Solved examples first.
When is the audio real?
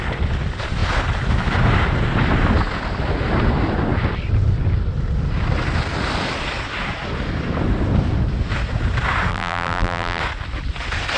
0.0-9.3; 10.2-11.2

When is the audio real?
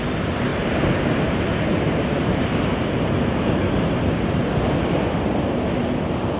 0.0-0.5; 4.3-6.4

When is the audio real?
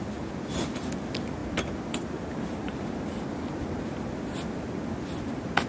0.0-5.7